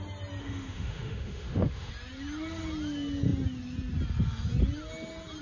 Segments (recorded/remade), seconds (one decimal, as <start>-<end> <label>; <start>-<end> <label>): 0.0-0.4 recorded; 0.4-1.9 remade; 1.9-5.4 recorded